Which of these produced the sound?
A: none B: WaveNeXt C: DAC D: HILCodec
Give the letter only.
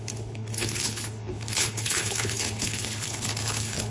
D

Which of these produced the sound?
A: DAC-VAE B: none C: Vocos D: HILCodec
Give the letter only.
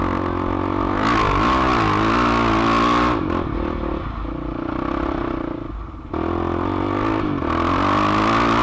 B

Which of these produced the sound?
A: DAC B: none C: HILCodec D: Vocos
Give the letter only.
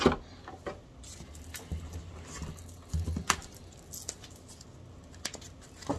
B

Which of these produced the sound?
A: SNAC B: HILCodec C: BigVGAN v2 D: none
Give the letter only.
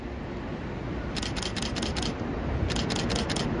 D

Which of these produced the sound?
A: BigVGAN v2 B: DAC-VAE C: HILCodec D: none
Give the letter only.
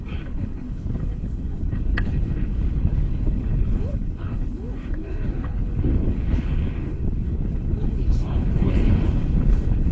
C